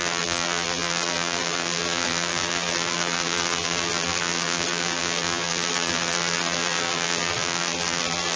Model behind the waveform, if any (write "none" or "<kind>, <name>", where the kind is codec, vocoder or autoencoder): vocoder, BigVGAN v2